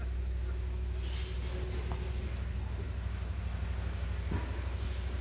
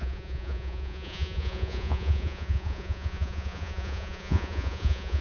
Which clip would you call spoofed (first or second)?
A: second